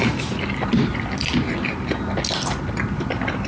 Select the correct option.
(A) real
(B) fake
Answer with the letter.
A